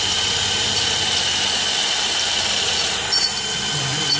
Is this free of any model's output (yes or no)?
no